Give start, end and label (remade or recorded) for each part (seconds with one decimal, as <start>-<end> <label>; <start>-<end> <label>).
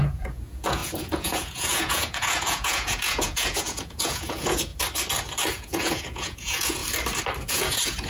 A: 0.0-4.7 remade; 4.7-5.5 recorded; 5.5-6.8 remade; 6.8-7.5 recorded; 7.5-8.1 remade